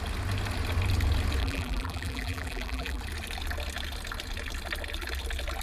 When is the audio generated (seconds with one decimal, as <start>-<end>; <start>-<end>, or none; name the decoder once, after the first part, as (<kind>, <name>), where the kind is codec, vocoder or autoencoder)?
1.4-3.0 (vocoder, BigVGAN v2)